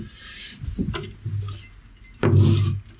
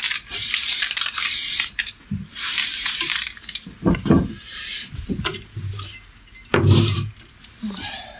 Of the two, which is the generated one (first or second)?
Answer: second